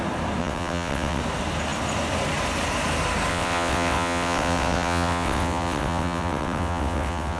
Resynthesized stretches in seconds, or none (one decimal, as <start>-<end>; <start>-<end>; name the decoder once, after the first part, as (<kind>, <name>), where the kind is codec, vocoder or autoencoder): 0.4-1.2 (vocoder, WaveNeXt); 3.3-7.4